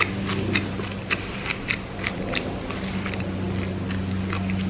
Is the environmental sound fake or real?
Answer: real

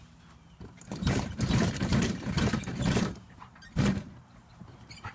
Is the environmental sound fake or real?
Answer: fake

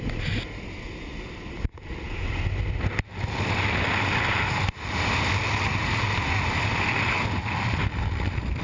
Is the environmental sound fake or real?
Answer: real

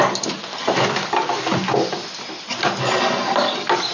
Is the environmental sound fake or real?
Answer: real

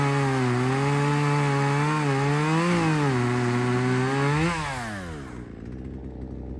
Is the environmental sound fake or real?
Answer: real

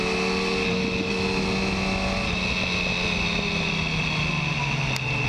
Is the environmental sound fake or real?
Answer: real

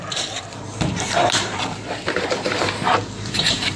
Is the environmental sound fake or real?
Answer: fake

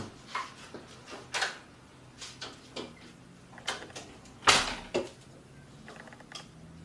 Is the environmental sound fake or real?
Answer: real